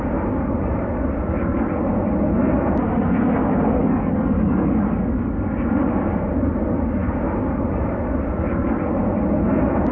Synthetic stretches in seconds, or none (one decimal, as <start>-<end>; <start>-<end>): 3.8-4.7